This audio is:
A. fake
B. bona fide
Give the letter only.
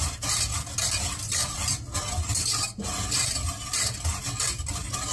B